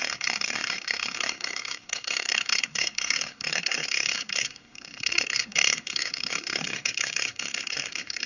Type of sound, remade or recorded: remade